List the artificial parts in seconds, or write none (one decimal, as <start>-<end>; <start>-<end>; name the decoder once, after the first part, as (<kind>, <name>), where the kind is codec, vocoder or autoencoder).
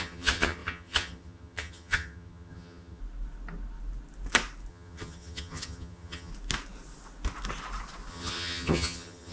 0.0-3.0 (vocoder, HiFi-GAN); 4.7-6.3; 8.1-9.3